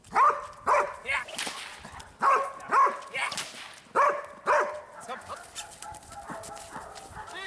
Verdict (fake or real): real